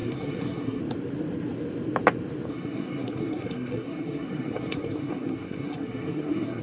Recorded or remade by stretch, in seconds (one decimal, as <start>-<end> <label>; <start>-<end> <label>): 0.0-0.8 remade; 0.8-2.5 recorded; 2.5-6.6 remade

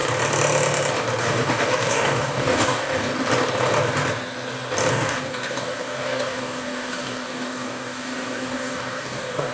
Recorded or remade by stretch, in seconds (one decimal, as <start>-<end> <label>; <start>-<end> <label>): 0.0-1.2 recorded; 1.2-3.1 remade; 3.1-4.9 recorded; 4.9-9.5 remade

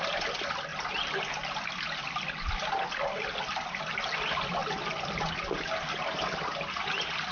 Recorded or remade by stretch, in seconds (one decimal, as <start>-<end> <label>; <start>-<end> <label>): 0.0-7.3 recorded

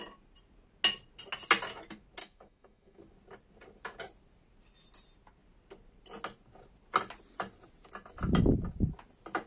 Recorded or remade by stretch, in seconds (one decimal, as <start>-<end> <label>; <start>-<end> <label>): 0.0-2.2 recorded; 2.2-3.0 remade; 3.0-9.5 recorded

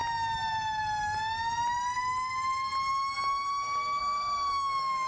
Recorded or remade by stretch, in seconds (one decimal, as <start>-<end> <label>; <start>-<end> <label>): 0.0-4.0 recorded; 4.0-5.1 remade